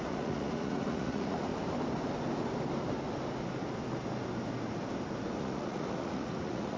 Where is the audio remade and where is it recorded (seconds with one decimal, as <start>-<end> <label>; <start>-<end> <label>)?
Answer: 0.0-1.5 remade; 1.5-5.4 recorded; 5.4-6.8 remade